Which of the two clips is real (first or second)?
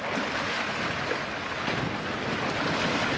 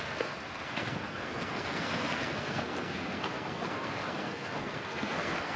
first